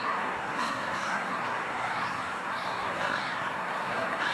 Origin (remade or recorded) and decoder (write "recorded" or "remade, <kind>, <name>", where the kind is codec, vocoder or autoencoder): remade, codec, SNAC